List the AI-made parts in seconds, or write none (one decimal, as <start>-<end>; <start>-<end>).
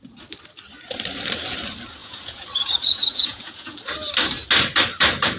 2.0-3.7